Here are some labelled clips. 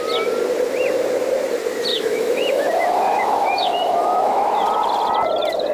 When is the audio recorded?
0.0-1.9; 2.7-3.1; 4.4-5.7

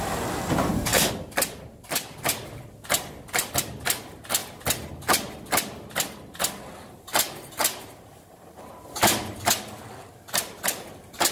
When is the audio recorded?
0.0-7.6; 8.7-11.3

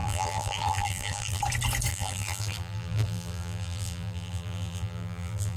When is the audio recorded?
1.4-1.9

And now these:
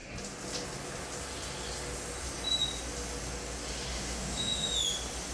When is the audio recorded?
0.0-3.9; 4.7-5.3